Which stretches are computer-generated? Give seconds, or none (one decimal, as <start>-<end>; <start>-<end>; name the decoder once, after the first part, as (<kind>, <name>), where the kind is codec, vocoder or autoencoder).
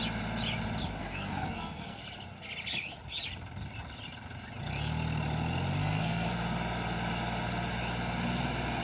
1.0-2.0 (codec, SNAC); 5.8-6.3